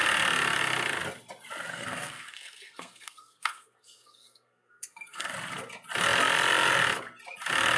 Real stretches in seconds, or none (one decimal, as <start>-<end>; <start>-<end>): 0.0-1.7; 5.3-7.8